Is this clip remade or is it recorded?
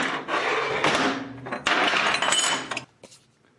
recorded